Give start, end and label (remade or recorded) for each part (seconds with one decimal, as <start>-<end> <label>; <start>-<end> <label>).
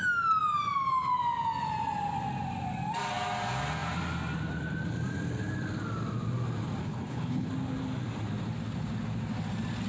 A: 0.0-6.8 recorded; 6.8-7.5 remade; 7.5-9.9 recorded